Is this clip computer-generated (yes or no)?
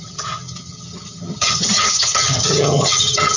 yes